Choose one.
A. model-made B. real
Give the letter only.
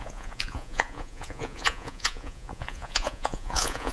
A